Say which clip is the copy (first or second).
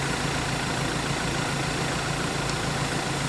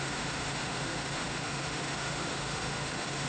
second